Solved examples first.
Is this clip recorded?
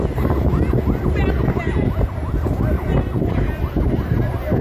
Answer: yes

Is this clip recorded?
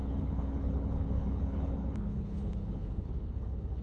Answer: no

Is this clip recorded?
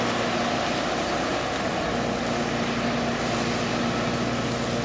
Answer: yes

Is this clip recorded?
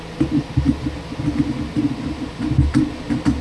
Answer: yes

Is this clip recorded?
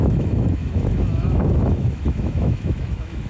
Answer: no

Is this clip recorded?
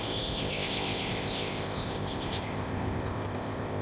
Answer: no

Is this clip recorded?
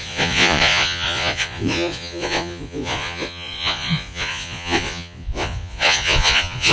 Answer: no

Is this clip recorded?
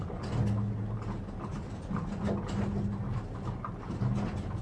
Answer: yes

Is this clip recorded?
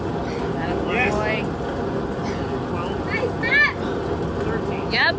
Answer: yes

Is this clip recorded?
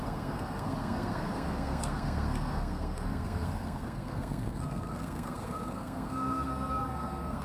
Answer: no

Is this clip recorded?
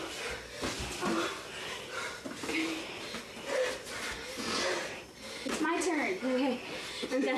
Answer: yes